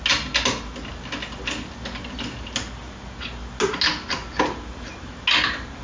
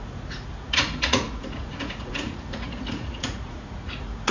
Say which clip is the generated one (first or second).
second